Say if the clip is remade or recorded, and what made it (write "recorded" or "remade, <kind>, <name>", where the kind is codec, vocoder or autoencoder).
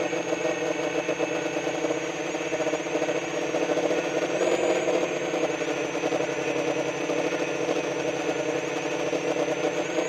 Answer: recorded